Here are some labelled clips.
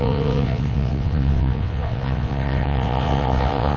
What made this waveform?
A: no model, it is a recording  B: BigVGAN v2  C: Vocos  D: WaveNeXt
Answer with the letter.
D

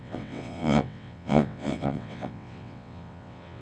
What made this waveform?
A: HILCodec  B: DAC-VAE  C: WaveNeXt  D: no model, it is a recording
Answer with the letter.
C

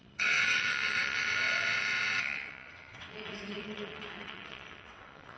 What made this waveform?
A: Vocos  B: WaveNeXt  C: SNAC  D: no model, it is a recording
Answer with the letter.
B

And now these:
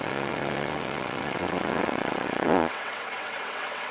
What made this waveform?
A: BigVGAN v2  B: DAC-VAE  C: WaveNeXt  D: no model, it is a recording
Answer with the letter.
C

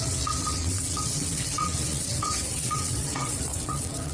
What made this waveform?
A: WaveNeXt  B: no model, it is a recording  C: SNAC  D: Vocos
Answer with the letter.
A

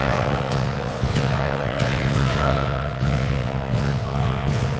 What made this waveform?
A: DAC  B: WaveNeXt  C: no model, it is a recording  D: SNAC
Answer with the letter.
B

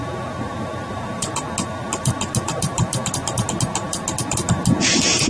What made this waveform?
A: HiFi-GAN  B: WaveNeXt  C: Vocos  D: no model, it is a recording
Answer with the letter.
D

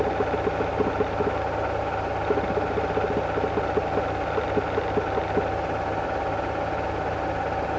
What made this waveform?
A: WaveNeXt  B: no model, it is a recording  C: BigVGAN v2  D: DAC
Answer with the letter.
B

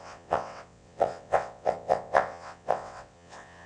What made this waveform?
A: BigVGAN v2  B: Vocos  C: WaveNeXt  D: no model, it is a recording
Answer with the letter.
C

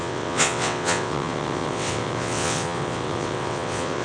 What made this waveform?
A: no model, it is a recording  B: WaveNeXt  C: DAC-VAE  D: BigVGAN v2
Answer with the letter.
B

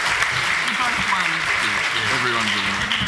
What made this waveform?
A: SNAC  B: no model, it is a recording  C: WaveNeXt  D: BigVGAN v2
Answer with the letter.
B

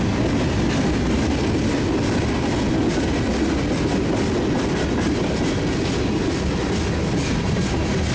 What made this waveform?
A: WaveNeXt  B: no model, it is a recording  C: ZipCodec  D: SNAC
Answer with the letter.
B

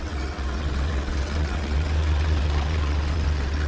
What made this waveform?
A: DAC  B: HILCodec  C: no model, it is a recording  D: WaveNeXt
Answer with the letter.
D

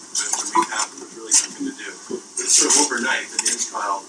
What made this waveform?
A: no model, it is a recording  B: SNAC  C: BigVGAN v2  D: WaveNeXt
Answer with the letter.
A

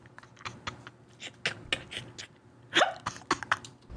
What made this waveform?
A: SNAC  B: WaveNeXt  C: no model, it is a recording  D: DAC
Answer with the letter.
C